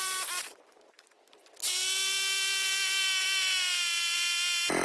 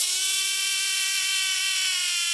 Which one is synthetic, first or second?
second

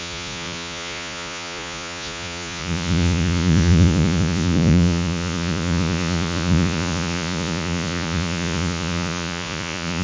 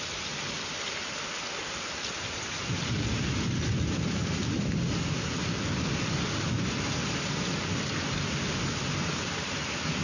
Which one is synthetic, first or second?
first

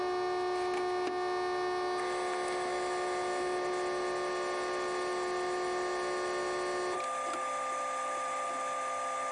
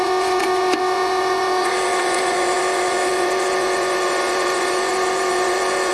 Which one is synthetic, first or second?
second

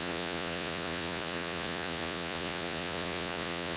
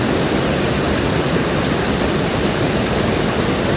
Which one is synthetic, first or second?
first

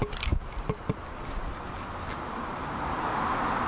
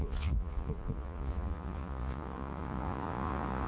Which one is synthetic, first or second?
second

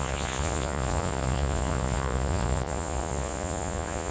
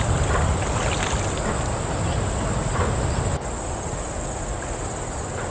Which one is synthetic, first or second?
first